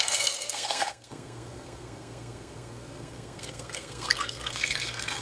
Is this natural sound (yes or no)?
no